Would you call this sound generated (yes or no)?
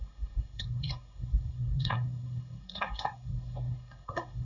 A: yes